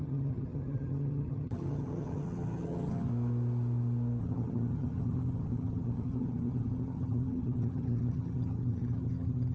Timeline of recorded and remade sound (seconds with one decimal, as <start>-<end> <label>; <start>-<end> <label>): 0.0-3.1 remade; 3.1-4.2 recorded; 4.2-9.5 remade